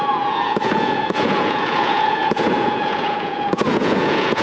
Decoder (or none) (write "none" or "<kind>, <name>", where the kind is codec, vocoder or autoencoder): vocoder, Vocos